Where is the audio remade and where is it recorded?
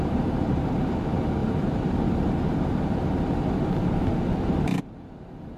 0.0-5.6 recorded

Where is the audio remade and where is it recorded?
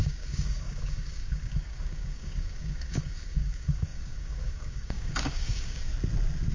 0.0-5.9 remade; 5.9-6.5 recorded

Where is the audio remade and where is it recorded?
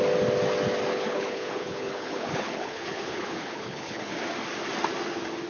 0.0-0.9 recorded; 0.9-4.2 remade; 4.2-5.5 recorded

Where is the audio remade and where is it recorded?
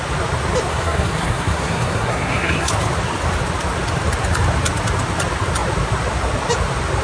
0.0-0.7 recorded; 0.7-2.7 remade; 2.7-7.0 recorded